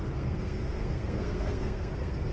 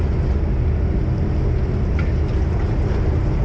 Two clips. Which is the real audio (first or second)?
second